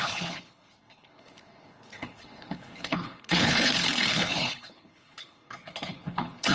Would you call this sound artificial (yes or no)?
yes